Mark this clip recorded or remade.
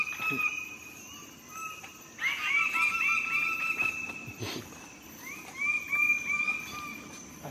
recorded